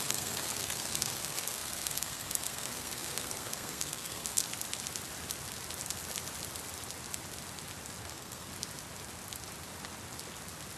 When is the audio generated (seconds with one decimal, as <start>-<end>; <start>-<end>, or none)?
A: 0.0-4.4; 8.0-8.5